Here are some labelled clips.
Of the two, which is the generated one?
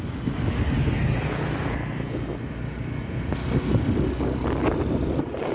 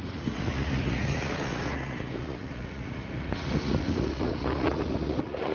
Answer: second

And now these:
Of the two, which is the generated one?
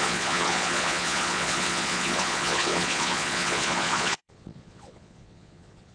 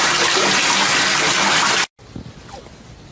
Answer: first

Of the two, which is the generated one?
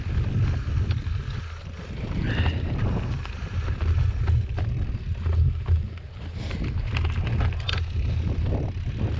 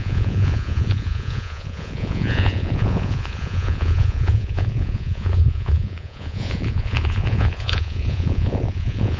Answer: second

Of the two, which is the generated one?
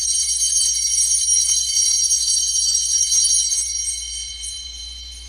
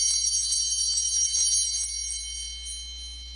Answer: first